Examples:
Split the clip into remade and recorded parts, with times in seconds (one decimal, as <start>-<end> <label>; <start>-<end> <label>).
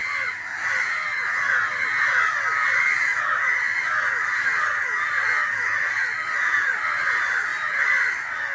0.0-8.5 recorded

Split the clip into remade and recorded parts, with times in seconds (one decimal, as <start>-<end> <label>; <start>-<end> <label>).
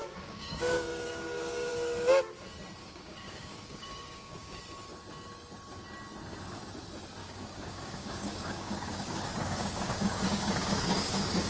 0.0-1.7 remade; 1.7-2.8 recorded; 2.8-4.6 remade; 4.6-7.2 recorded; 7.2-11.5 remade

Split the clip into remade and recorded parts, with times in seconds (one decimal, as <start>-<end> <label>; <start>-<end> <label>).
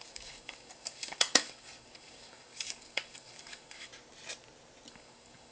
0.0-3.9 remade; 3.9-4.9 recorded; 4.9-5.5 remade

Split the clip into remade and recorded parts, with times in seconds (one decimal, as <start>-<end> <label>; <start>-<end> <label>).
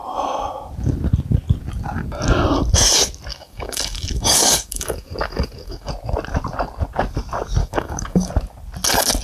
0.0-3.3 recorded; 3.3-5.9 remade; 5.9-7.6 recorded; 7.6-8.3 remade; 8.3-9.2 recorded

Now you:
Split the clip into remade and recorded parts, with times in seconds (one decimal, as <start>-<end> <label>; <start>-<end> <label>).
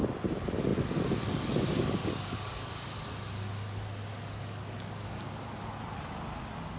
0.0-2.0 recorded; 2.0-2.7 remade; 2.7-4.1 recorded; 4.1-5.4 remade; 5.4-6.8 recorded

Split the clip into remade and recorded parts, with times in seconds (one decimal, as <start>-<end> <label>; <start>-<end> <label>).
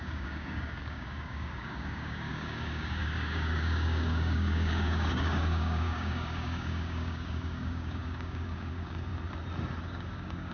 0.0-9.1 remade; 9.1-9.8 recorded; 9.8-10.5 remade